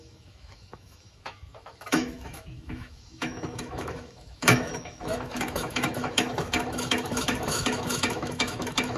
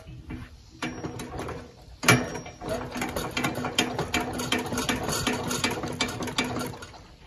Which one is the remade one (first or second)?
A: first